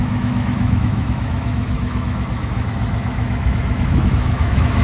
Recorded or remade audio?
remade